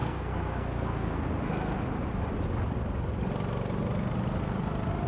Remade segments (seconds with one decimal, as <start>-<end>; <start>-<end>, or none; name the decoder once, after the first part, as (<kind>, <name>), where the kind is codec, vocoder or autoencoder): 0.0-1.3 (codec, SNAC)